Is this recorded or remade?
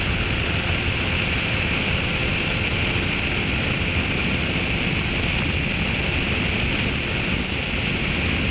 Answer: recorded